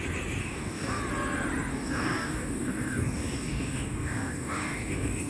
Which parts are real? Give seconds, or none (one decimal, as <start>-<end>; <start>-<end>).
0.0-0.4; 1.0-1.7